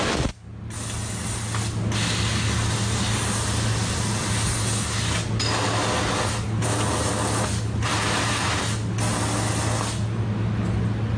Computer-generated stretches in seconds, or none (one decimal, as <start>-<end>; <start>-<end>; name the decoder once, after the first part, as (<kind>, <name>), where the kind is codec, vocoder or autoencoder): 7.9-8.5 (vocoder, BigVGAN v2)